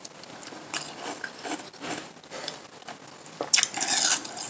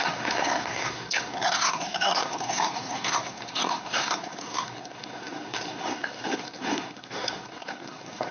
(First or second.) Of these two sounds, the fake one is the second